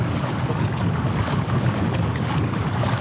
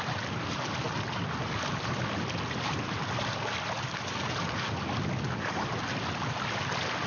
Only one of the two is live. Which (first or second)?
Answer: second